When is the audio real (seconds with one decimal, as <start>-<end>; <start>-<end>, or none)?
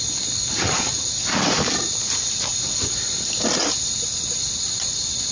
0.0-5.3